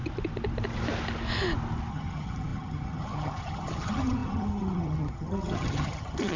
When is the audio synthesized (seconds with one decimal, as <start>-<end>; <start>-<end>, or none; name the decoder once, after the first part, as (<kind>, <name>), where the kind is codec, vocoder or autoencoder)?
1.9-6.4 (vocoder, HiFi-GAN)